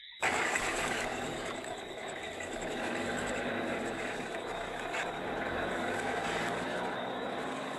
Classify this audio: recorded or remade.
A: remade